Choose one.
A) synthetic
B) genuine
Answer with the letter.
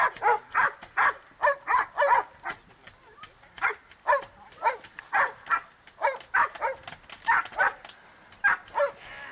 B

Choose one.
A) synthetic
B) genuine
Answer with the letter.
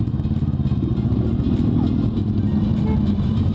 B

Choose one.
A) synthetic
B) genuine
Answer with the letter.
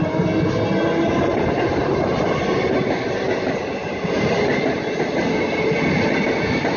B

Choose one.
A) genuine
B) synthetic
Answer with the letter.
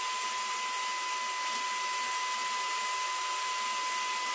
A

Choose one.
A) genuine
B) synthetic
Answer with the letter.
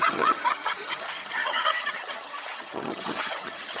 B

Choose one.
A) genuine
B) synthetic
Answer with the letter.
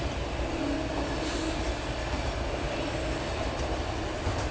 A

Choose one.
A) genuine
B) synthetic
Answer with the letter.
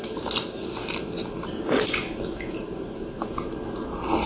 A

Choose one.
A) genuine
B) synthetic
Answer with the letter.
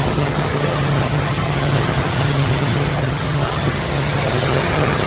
B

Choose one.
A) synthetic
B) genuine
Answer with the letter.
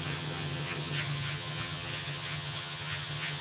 A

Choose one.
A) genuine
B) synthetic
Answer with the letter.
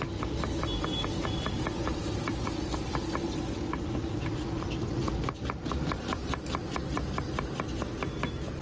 A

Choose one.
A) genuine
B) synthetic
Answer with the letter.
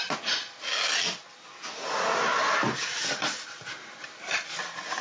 A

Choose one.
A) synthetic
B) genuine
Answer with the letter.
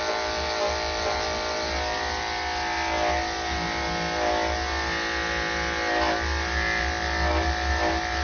B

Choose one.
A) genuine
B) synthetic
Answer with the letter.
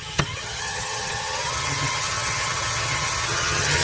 B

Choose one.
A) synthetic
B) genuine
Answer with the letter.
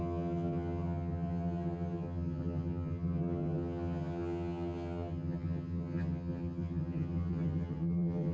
A